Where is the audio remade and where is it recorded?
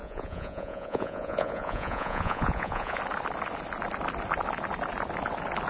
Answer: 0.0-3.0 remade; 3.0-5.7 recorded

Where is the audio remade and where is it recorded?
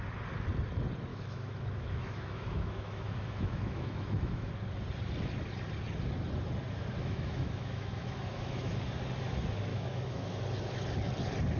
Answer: 0.0-1.1 recorded; 1.1-4.5 remade; 4.5-7.0 recorded; 7.0-8.7 remade; 8.7-9.7 recorded; 9.7-10.4 remade; 10.4-11.6 recorded